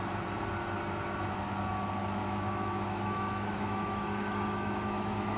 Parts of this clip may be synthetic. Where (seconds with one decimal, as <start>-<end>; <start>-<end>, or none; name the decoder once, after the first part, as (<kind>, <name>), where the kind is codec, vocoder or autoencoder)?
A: 2.0-5.4 (autoencoder, DAC-VAE)